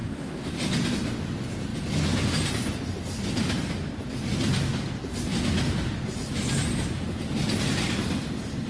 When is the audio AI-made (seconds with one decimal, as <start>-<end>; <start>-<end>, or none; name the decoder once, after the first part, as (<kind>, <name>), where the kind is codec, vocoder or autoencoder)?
0.0-0.5 (codec, DAC)